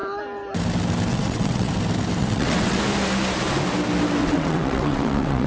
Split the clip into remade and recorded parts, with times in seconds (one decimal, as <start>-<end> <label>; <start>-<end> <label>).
0.0-1.1 recorded; 1.1-1.7 remade; 1.7-2.2 recorded; 2.2-2.8 remade; 2.8-4.2 recorded; 4.2-5.5 remade